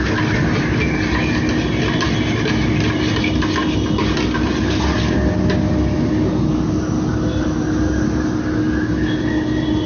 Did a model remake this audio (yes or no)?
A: no